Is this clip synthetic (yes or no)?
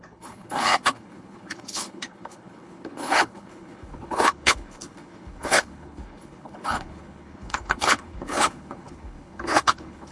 yes